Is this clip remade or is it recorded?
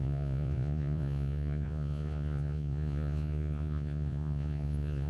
remade